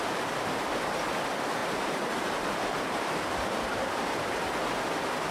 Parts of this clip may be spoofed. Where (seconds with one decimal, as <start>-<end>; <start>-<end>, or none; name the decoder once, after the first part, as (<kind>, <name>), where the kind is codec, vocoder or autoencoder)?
1.6-4.8 (vocoder, BigVGAN v2)